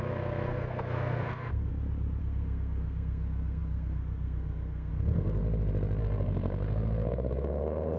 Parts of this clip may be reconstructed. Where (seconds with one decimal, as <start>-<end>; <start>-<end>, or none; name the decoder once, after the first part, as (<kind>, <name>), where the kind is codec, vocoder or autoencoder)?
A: 0.0-1.7 (codec, SNAC); 2.2-5.4; 6.0-8.0